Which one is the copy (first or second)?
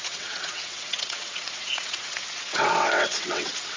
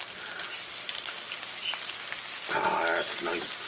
first